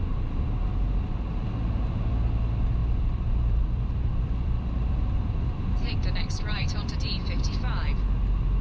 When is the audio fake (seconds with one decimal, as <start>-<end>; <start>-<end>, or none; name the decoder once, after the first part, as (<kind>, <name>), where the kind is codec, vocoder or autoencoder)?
2.8-6.9 (vocoder, BigVGAN v2)